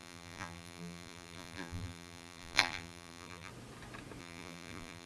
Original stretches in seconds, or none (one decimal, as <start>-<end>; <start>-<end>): 3.5-4.2